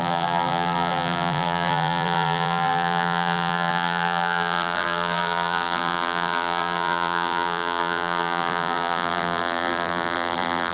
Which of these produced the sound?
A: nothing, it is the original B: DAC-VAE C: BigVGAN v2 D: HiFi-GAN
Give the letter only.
C